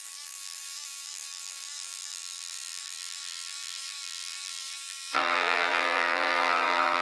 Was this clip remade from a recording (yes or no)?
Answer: yes